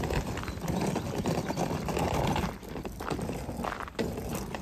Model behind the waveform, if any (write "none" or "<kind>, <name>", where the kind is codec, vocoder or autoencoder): none